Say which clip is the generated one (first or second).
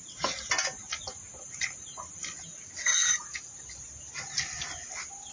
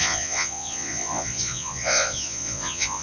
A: second